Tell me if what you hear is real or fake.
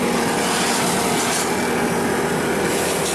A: real